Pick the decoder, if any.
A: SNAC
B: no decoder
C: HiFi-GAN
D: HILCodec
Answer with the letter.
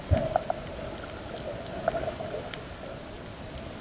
B